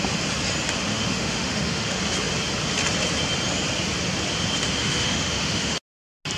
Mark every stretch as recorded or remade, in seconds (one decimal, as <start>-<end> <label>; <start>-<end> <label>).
0.0-0.9 recorded; 0.9-2.0 remade; 2.0-4.8 recorded; 4.8-5.8 remade; 5.8-6.4 recorded